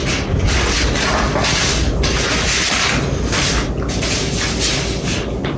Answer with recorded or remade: recorded